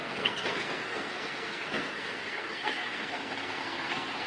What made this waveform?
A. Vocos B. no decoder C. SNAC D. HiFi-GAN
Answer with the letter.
C